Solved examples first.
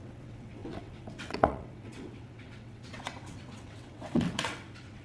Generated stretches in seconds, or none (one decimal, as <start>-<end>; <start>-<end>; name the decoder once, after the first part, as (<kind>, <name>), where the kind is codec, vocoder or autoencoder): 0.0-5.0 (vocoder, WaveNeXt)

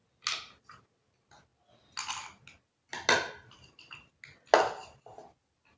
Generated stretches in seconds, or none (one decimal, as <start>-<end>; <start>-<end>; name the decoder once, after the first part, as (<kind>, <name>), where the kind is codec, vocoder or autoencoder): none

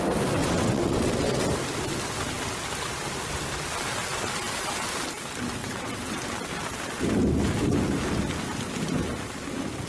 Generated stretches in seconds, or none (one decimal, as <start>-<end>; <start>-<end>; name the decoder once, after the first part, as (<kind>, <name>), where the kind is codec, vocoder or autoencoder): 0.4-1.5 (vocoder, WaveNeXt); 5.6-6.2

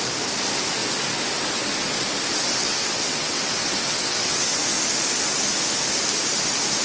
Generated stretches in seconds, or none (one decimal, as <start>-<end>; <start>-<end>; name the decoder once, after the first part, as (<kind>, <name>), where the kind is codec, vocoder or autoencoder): 2.6-4.6 (vocoder, WaveNeXt)

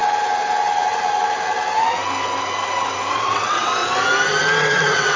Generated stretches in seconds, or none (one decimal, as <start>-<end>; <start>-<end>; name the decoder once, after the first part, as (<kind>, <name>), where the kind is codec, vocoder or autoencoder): 3.1-3.8 (vocoder, WaveNeXt); 4.6-5.2

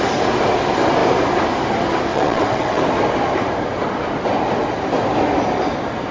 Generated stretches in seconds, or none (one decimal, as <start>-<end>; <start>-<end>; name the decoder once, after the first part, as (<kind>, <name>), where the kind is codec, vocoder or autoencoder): 2.1-2.8 (vocoder, WaveNeXt)

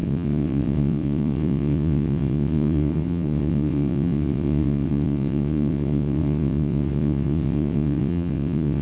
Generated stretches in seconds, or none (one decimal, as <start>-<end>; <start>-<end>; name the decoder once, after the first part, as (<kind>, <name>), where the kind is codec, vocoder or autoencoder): 0.0-8.8 (vocoder, WaveNeXt)